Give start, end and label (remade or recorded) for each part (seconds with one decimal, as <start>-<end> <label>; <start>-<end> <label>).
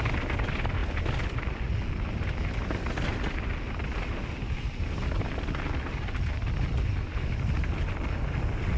0.0-8.8 recorded